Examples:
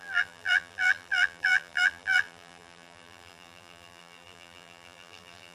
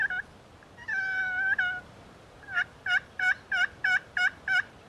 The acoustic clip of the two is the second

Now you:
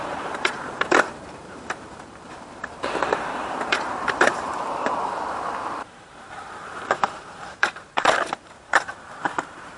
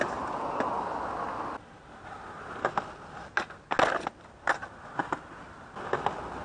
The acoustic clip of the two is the second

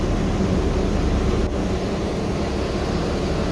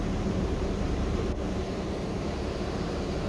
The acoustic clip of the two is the first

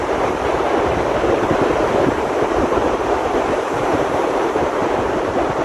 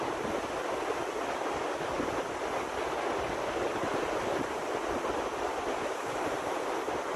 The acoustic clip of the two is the second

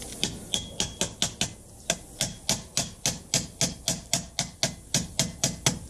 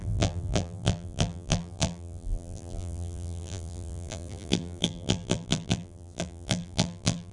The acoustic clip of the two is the first